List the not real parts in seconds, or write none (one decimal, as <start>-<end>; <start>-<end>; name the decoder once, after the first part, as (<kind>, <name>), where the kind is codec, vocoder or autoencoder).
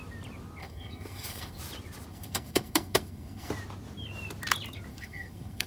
0.6-1.6 (codec, SNAC); 2.1-3.5; 4.9-5.7